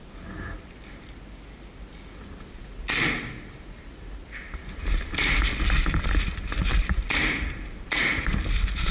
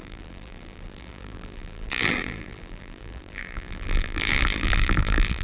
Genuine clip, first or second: first